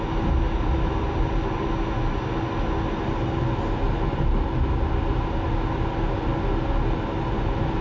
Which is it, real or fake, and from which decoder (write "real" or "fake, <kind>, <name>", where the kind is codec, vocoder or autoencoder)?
real